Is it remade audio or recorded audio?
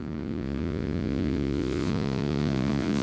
remade